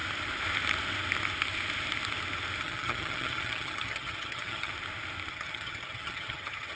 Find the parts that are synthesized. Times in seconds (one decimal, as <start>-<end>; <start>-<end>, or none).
2.6-4.7; 5.3-6.8